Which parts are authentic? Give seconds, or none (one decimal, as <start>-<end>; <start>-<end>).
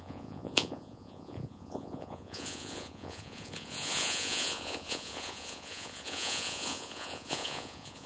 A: none